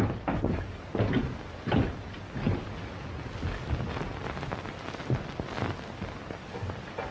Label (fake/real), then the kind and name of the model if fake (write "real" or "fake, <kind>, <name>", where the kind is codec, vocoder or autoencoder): real